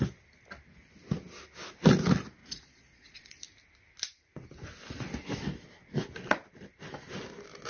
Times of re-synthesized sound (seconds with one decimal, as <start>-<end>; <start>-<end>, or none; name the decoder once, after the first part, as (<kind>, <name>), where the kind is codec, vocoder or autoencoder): 2.4-3.4 (vocoder, Vocos)